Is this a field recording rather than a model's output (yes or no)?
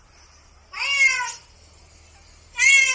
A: yes